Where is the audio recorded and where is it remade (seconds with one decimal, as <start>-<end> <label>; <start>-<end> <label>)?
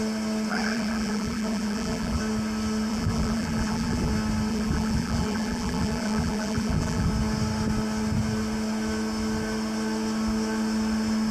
0.0-0.5 recorded; 0.5-2.2 remade; 2.2-2.9 recorded; 2.9-4.1 remade; 4.1-4.5 recorded; 4.5-7.1 remade; 7.1-11.3 recorded